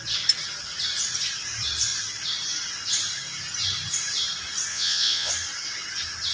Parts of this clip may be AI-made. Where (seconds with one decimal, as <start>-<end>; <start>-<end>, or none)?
4.7-5.3